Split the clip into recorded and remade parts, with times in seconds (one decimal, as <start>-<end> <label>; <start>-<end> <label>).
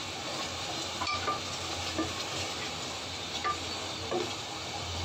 0.0-5.0 recorded